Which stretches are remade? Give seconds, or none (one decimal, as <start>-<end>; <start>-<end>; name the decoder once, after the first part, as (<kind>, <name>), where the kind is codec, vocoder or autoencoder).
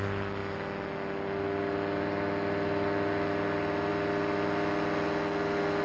none